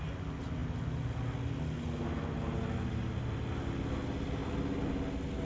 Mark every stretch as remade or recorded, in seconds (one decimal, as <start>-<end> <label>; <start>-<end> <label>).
0.0-5.4 recorded